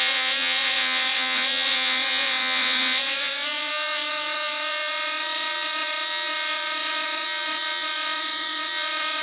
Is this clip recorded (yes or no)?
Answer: no